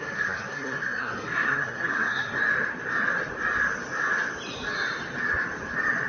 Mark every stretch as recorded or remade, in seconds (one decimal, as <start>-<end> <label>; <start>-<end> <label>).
0.0-2.4 remade; 2.4-6.1 recorded